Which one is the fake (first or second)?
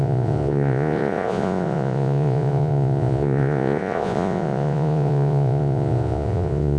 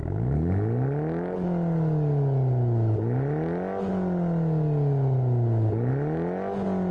first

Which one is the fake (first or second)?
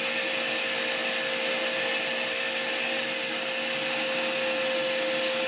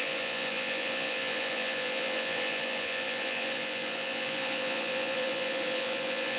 second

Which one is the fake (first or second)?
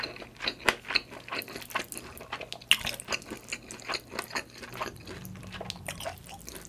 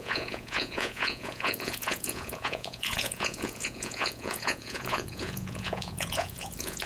second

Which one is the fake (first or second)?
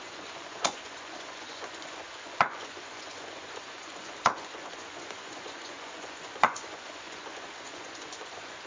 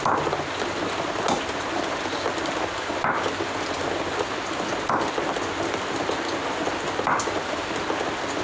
first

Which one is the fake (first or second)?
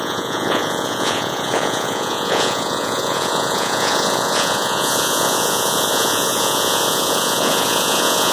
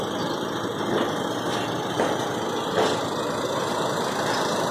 first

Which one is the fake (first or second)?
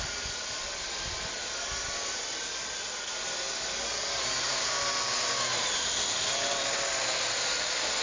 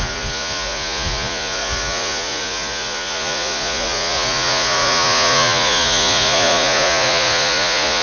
second